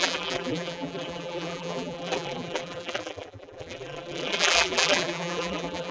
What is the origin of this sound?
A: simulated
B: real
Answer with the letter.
A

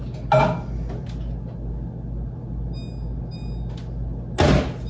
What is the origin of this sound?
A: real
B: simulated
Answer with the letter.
A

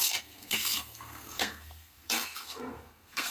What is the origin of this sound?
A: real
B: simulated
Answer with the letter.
B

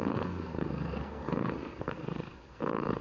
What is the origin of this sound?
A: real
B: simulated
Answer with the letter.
B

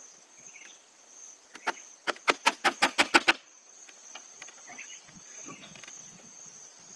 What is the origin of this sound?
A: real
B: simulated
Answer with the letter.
A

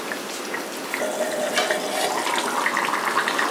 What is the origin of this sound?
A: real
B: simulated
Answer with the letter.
A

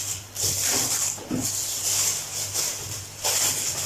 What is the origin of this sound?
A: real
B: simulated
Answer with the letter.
A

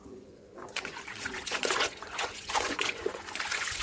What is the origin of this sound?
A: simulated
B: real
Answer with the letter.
A